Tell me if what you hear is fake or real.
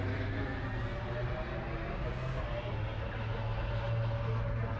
real